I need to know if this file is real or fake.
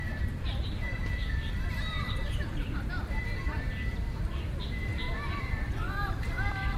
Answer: fake